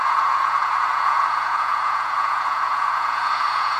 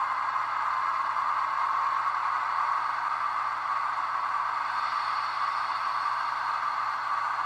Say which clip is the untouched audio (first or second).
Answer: second